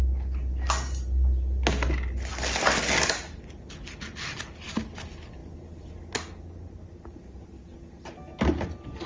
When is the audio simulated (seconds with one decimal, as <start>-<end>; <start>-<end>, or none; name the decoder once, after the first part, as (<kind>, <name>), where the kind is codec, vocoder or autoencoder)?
none